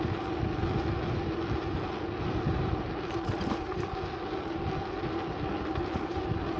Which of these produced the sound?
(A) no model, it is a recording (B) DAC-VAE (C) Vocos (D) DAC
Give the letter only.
A